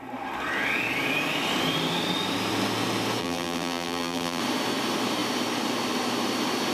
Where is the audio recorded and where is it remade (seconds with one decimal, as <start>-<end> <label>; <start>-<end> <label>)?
0.0-3.2 recorded; 3.2-4.4 remade; 4.4-6.7 recorded